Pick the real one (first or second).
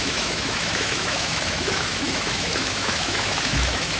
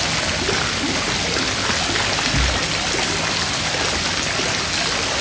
second